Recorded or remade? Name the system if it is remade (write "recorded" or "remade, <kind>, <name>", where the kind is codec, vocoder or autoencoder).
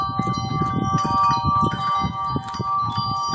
recorded